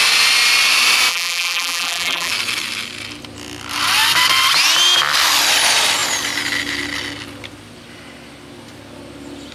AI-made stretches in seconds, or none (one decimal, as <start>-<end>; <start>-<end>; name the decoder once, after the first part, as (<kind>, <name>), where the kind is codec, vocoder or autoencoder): 1.1-2.3 (vocoder, BigVGAN v2)

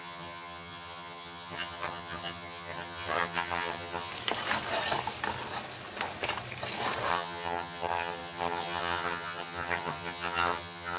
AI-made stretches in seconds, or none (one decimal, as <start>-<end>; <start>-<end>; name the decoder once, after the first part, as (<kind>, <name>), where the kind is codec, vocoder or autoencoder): 0.0-4.1 (vocoder, HiFi-GAN); 7.1-11.0

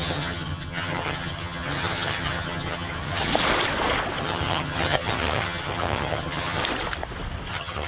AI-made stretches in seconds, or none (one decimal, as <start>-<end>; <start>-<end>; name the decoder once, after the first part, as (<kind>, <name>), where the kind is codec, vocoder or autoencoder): 0.0-3.3 (vocoder, HiFi-GAN); 4.2-6.6; 7.5-7.9

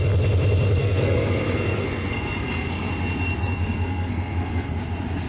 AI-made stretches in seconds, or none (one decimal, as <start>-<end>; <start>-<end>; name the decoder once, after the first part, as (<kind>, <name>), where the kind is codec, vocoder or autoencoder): 0.8-2.9 (codec, SNAC); 3.4-4.8

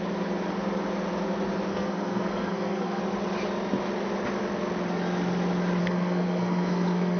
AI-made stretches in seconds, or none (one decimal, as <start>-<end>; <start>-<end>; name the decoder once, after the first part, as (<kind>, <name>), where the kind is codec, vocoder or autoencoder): 1.7-3.0 (codec, SNAC); 5.8-7.2

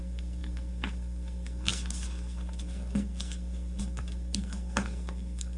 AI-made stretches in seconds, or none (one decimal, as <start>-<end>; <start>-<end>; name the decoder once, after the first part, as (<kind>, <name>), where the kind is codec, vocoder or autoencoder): 0.0-5.6 (codec, SNAC)

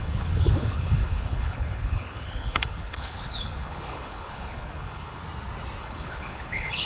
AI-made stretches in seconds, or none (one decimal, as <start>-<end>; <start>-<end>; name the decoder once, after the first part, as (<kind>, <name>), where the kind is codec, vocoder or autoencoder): 0.0-5.2 (codec, HILCodec); 5.8-6.9